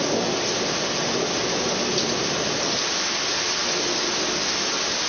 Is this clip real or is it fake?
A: real